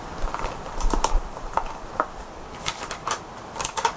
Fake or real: fake